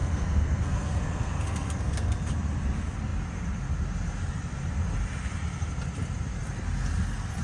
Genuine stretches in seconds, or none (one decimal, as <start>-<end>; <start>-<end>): 2.3-7.4